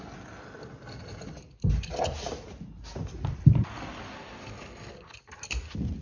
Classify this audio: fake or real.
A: real